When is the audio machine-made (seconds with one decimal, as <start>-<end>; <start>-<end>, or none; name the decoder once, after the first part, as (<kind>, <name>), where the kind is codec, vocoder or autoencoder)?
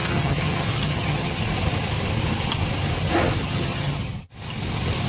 0.0-1.4 (vocoder, HiFi-GAN); 3.4-4.3